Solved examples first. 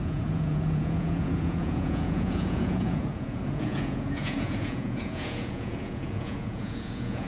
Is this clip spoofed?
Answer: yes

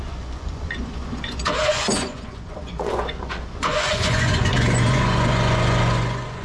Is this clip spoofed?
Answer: yes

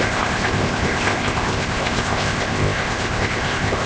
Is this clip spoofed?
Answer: yes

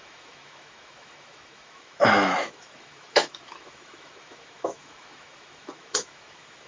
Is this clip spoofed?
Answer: yes